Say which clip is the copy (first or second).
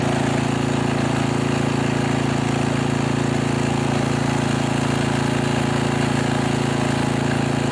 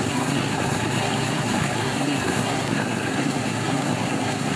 second